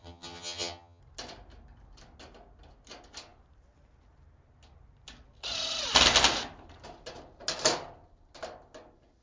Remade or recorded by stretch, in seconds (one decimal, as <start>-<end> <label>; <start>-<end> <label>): 0.0-1.0 remade; 1.0-9.2 recorded